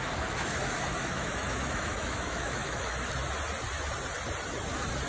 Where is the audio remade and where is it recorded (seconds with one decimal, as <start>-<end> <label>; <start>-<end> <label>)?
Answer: 0.0-3.1 remade; 3.1-5.1 recorded

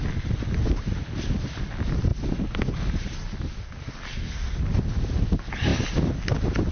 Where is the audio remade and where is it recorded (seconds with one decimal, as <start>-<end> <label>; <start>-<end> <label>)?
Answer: 0.0-6.7 recorded

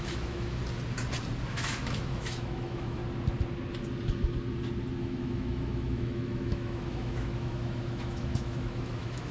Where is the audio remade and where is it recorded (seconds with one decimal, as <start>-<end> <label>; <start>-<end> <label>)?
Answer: 0.0-0.6 remade; 0.6-1.5 recorded; 1.5-3.0 remade; 3.0-5.0 recorded; 5.0-9.3 remade

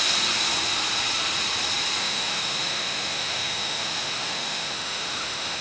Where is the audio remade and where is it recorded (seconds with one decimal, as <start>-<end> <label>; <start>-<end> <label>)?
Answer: 0.0-2.0 recorded; 2.0-5.6 remade

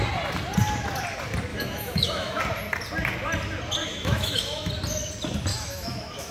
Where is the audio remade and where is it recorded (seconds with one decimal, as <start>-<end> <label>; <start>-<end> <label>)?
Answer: 0.0-1.5 recorded; 1.5-2.4 remade; 2.4-3.8 recorded; 3.8-4.7 remade; 4.7-5.5 recorded; 5.5-6.3 remade